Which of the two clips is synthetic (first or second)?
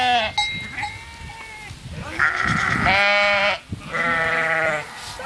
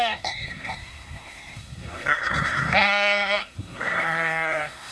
second